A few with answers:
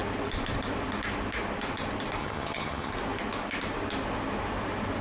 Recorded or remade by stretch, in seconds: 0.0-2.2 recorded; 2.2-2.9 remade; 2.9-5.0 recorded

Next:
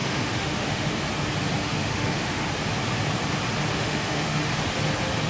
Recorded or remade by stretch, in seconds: 0.0-0.9 remade; 0.9-1.6 recorded; 1.6-2.4 remade; 2.4-3.7 recorded; 3.7-4.4 remade; 4.4-5.3 recorded

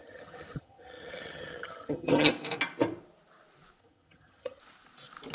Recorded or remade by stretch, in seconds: 0.0-2.3 remade; 2.3-3.8 recorded; 3.8-4.6 remade; 4.6-5.3 recorded

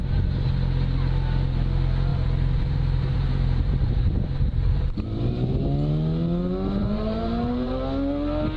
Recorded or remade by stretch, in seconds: 0.0-2.1 recorded; 2.1-5.2 remade; 5.2-6.8 recorded; 6.8-7.7 remade; 7.7-8.6 recorded